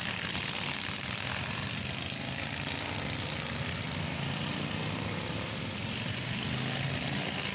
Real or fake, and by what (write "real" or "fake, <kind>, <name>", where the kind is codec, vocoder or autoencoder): real